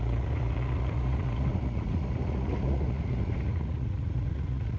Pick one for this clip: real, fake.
fake